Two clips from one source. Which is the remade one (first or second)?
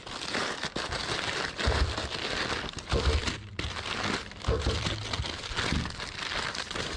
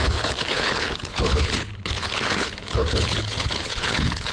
second